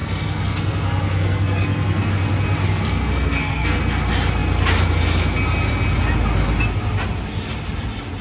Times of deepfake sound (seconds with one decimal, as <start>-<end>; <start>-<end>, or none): 0.0-2.1; 2.6-3.8